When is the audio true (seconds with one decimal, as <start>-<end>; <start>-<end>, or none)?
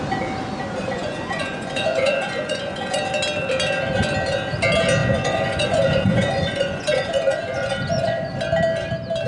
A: 0.0-0.8; 3.0-5.0; 8.3-9.3